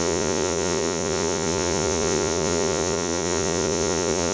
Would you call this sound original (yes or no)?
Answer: no